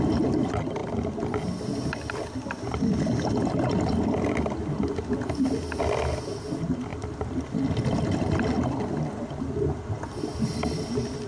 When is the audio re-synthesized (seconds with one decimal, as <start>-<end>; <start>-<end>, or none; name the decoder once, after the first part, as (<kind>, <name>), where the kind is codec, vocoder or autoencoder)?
none